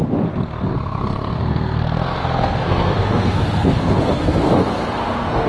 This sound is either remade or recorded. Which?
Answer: remade